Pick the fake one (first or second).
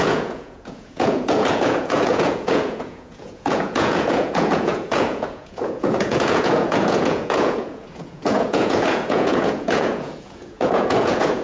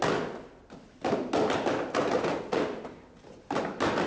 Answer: first